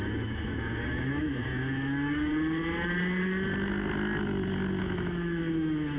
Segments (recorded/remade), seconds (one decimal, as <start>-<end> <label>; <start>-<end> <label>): 0.0-2.3 remade; 2.3-4.8 recorded; 4.8-6.0 remade